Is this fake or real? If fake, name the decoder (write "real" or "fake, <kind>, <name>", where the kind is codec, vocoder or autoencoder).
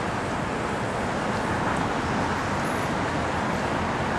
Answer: real